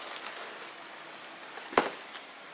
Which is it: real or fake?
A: fake